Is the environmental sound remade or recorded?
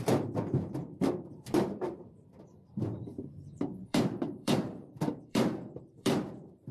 remade